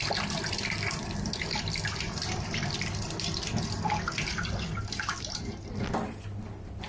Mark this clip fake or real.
fake